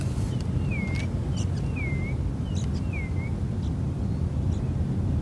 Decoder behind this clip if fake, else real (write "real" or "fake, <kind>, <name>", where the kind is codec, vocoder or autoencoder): real